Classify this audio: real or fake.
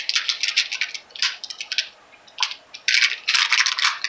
real